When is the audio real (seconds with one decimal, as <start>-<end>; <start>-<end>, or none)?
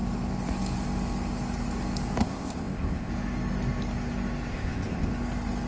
0.0-2.2; 3.1-4.5; 5.1-5.7